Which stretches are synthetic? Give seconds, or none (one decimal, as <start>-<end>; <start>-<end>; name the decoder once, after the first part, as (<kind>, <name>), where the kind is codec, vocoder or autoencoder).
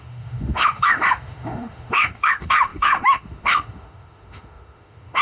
0.0-5.2 (autoencoder, DAC-VAE)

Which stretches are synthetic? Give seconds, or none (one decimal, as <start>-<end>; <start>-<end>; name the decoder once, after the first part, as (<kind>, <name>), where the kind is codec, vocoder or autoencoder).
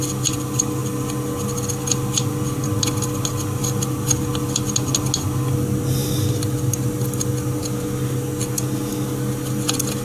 none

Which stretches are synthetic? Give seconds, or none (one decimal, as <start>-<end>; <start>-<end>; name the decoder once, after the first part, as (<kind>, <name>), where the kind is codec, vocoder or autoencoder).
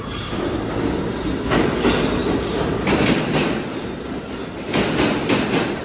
none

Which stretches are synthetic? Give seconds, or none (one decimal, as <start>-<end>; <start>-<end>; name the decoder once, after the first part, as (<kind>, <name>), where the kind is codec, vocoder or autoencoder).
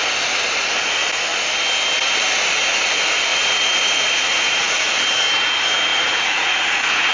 3.3-4.9 (vocoder, Vocos); 5.9-7.1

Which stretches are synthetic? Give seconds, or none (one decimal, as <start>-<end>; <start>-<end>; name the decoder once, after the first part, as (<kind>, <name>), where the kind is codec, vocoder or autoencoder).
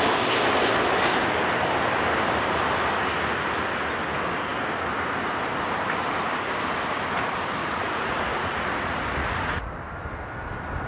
7.6-9.7 (vocoder, Vocos)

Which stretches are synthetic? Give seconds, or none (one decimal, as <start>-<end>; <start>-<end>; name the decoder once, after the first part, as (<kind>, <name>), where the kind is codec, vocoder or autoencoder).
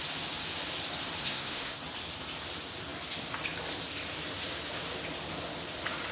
1.2-1.8 (codec, SNAC)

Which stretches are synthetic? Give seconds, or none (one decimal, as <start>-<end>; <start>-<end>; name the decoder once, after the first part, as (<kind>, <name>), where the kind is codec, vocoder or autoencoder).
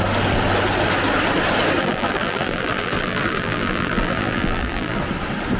1.8-5.0 (vocoder, BigVGAN v2)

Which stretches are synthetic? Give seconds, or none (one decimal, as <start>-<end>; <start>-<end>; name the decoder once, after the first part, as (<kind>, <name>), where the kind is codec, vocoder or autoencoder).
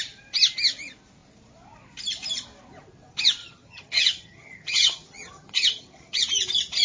3.4-6.2 (vocoder, HiFi-GAN)